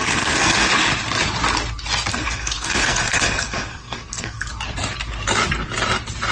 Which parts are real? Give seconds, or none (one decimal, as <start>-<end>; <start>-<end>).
0.7-2.1; 4.5-6.3